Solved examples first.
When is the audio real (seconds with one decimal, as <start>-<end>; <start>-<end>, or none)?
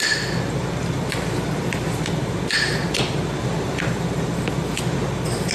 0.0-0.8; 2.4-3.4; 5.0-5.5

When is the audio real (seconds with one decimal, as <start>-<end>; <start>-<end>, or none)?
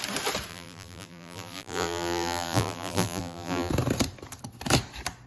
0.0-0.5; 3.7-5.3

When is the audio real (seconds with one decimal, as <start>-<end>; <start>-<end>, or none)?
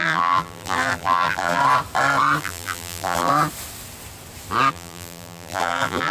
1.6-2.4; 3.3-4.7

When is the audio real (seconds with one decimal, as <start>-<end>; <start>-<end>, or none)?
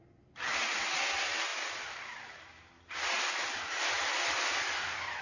0.0-5.2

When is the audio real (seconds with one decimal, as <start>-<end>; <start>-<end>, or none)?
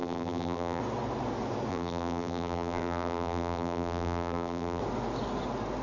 0.8-1.7; 4.8-5.8